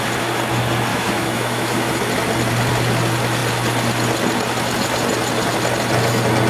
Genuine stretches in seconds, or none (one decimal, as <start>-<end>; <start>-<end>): 0.0-0.9; 1.9-6.5